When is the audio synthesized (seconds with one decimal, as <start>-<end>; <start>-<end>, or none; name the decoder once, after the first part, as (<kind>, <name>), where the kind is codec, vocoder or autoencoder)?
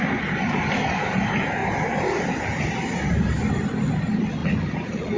4.4-5.2 (vocoder, Vocos)